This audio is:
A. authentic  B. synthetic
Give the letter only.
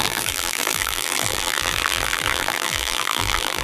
B